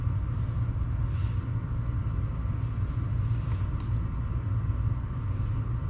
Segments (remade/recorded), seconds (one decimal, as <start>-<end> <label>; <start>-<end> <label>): 0.0-5.9 recorded